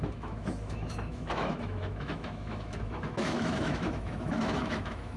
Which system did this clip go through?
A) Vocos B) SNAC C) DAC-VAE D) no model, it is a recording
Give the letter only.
C